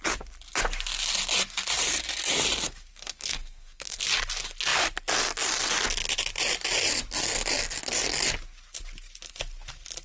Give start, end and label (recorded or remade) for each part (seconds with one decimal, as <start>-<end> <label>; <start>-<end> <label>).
0.0-2.9 recorded; 2.9-4.0 remade; 4.0-10.0 recorded